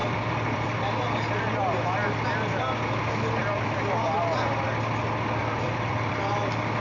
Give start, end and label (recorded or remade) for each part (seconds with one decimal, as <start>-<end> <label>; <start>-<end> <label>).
0.0-0.8 remade; 0.8-3.4 recorded; 3.4-4.4 remade; 4.4-5.4 recorded; 5.4-6.2 remade; 6.2-6.8 recorded